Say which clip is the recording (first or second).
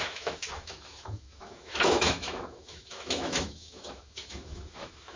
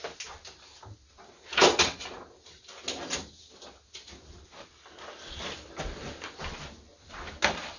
second